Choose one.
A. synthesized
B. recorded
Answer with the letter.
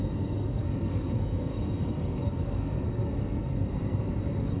A